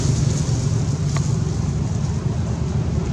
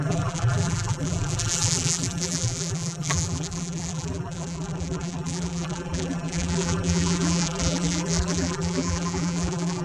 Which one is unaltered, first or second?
first